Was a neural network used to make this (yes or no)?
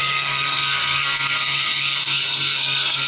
yes